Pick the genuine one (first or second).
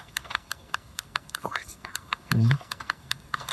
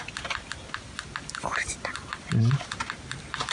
second